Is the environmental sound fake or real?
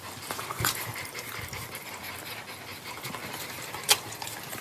real